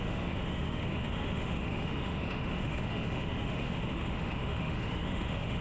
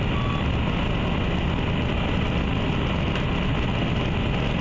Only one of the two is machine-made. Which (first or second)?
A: first